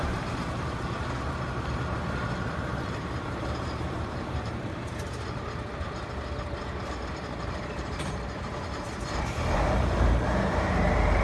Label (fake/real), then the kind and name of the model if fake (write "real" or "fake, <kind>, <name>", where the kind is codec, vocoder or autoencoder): fake, vocoder, BigVGAN v2